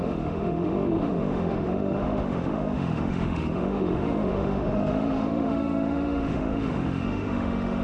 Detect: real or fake fake